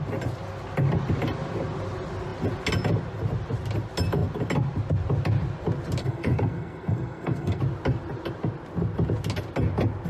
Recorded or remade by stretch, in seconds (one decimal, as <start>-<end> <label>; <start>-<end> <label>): 0.0-6.0 recorded; 6.0-7.6 remade; 7.6-10.1 recorded